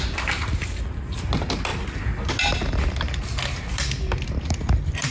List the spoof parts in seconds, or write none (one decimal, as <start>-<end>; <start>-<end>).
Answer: none